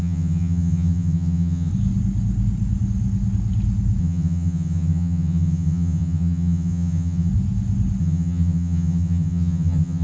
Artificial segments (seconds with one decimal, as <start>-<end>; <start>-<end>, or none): 0.0-1.7; 4.0-7.3; 8.0-10.0